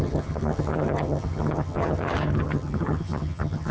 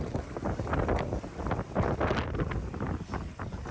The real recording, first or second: second